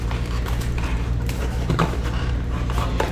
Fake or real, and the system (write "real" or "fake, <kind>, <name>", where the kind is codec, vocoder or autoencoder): fake, vocoder, BigVGAN v2